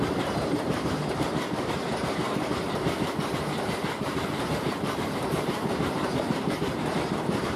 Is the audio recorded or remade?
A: remade